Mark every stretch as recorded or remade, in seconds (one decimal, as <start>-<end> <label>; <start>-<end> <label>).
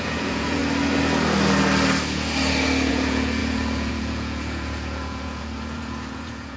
0.0-0.6 remade; 0.6-2.9 recorded; 2.9-6.6 remade